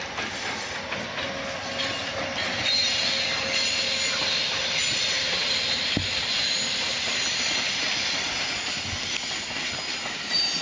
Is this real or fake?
real